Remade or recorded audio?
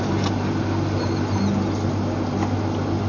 recorded